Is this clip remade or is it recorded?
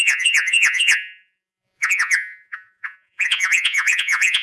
remade